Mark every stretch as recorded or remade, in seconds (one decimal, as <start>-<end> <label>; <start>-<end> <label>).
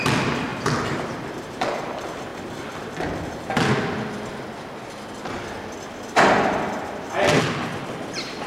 0.0-2.3 remade; 2.3-7.4 recorded; 7.4-8.5 remade